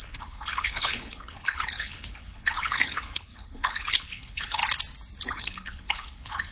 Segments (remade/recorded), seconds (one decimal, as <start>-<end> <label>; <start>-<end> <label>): 0.0-4.6 remade; 4.6-5.3 recorded; 5.3-6.5 remade